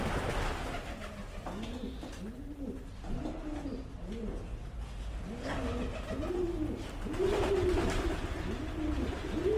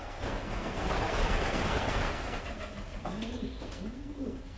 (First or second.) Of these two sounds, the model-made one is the second